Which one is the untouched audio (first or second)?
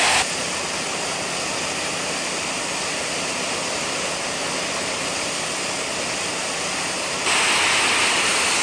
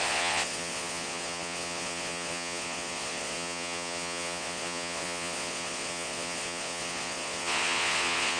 first